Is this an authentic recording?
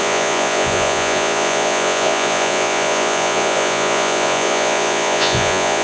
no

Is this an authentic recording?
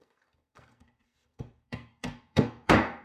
no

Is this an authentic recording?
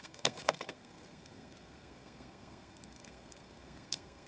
no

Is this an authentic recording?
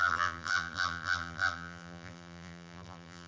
no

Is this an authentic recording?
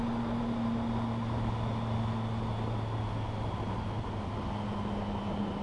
yes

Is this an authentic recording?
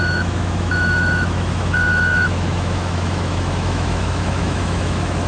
no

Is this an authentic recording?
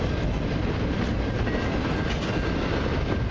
yes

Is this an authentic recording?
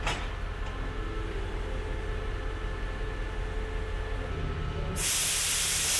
yes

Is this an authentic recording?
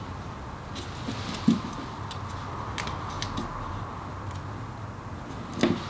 yes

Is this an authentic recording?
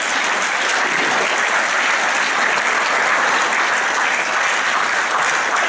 yes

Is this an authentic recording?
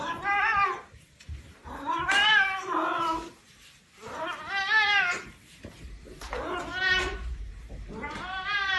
no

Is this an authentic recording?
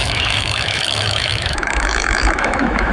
no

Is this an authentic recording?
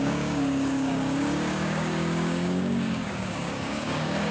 no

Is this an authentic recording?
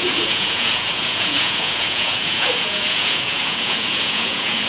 no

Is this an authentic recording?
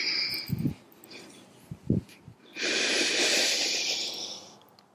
yes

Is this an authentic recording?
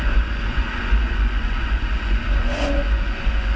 no